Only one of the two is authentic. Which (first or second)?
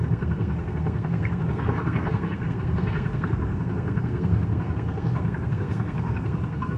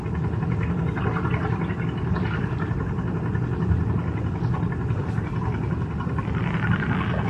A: second